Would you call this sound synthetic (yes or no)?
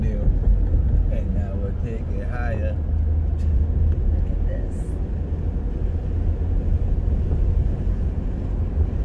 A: no